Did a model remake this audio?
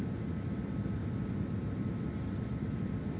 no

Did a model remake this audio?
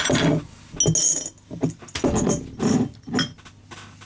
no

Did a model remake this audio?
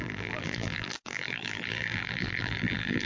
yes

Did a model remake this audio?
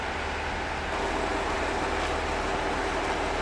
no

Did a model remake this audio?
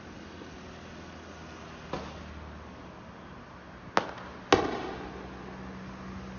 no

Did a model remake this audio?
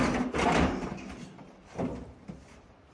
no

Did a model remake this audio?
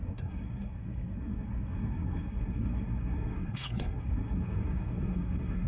yes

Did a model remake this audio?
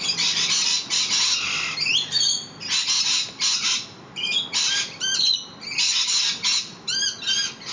no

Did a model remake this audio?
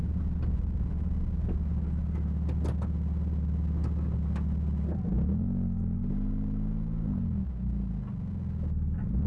no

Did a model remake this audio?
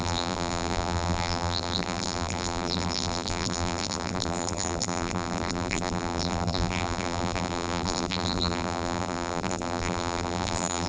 yes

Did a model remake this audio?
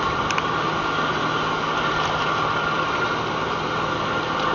no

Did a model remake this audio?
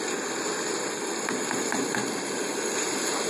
no